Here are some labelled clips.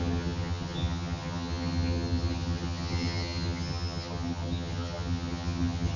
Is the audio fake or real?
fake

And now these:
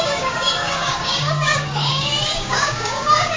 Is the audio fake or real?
fake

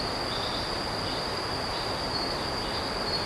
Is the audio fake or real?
real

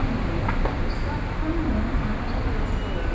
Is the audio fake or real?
real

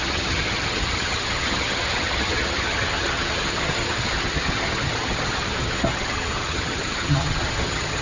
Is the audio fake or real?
fake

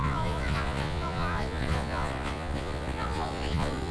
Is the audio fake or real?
fake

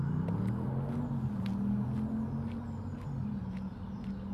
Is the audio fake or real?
real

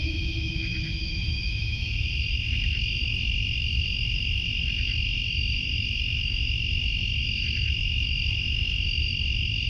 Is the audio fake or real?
fake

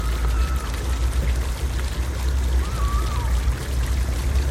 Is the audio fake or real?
real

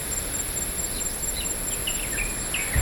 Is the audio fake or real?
real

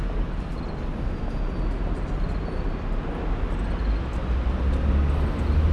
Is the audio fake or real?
real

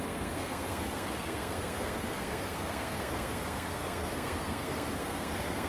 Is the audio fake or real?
fake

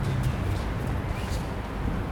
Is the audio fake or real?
real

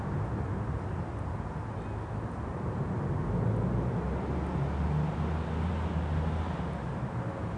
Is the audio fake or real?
real